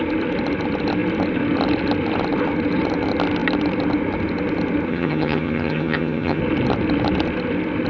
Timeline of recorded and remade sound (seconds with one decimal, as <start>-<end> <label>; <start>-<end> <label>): 0.0-4.9 recorded; 4.9-6.4 remade; 6.4-7.9 recorded

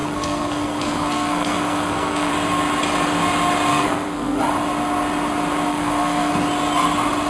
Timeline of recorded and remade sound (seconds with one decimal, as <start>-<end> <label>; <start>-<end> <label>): 0.0-2.3 remade; 2.3-3.7 recorded; 3.7-4.4 remade; 4.4-5.7 recorded; 5.7-6.3 remade; 6.3-7.3 recorded

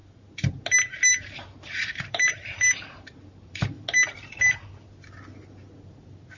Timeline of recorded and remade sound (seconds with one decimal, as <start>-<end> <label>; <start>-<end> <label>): 0.0-1.1 recorded; 1.1-3.7 remade; 3.7-6.4 recorded

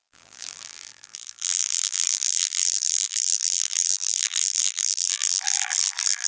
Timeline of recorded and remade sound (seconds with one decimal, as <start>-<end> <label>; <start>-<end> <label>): 0.0-6.3 remade

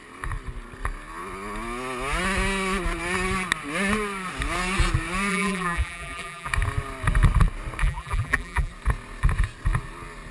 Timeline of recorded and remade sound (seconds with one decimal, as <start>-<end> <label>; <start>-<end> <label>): 0.0-5.3 recorded; 5.3-6.5 remade; 6.5-7.8 recorded; 7.8-8.7 remade; 8.7-10.3 recorded

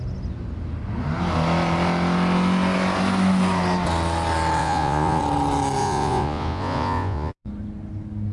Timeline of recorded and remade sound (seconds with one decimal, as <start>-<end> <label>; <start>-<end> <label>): 0.0-4.6 recorded; 4.6-5.2 remade; 5.2-5.8 recorded; 5.8-7.5 remade; 7.5-8.3 recorded

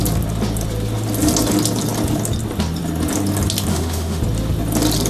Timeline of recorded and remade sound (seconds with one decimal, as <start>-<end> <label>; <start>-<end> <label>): 0.0-3.7 recorded; 3.7-4.2 remade; 4.2-5.1 recorded

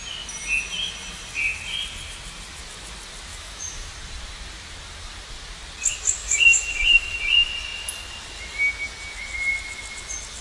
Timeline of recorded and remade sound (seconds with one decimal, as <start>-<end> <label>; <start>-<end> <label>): 0.0-3.3 recorded; 3.3-3.9 remade; 3.9-6.2 recorded; 6.2-7.2 remade; 7.2-10.4 recorded